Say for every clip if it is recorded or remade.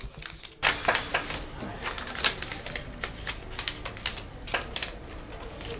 recorded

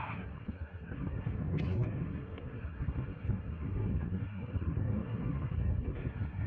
remade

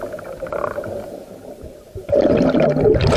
recorded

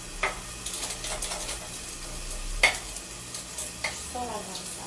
recorded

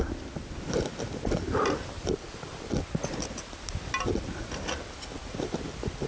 recorded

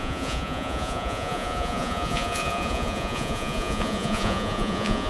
remade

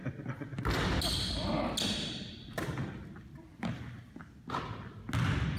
recorded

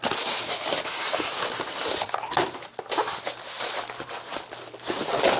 recorded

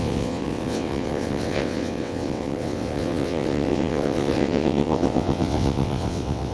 remade